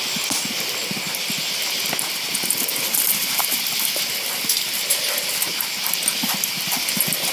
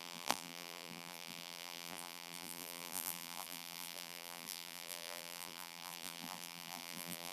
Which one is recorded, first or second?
first